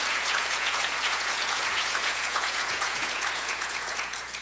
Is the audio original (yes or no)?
no